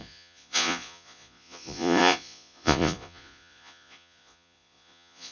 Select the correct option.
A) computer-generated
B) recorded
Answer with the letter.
A